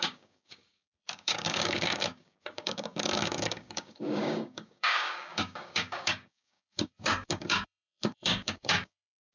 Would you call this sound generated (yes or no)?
yes